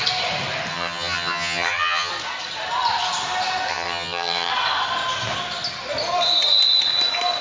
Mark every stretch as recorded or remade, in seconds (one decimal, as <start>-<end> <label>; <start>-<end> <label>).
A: 0.0-0.7 recorded; 0.7-2.1 remade; 2.1-3.7 recorded; 3.7-4.5 remade; 4.5-7.4 recorded